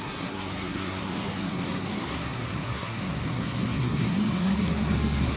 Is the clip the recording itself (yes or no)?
no